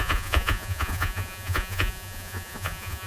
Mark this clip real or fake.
fake